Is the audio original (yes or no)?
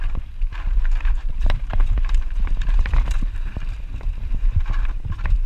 no